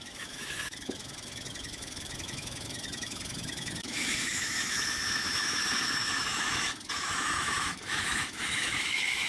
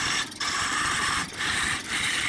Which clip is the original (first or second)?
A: second